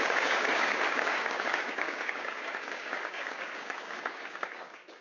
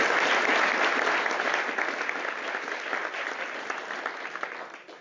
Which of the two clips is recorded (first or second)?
second